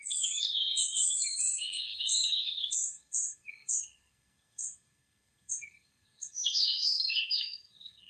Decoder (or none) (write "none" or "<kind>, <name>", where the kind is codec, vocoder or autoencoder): codec, SNAC